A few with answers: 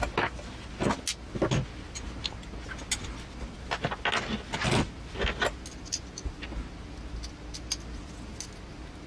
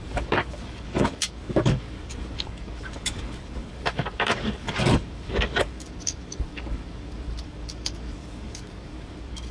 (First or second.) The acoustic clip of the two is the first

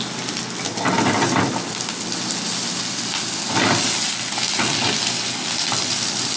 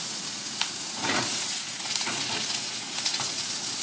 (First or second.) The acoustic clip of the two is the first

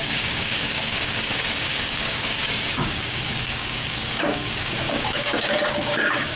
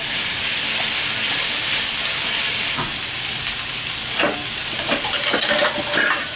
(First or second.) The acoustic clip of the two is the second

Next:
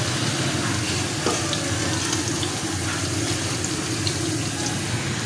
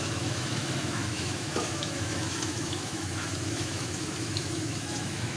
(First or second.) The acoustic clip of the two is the first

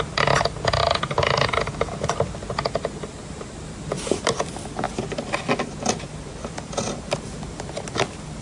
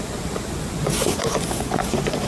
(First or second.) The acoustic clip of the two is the first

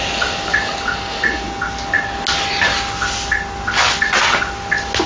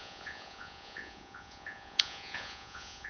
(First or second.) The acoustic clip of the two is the first